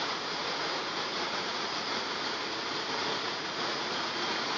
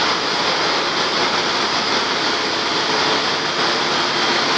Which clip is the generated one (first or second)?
first